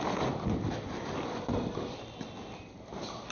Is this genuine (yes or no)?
yes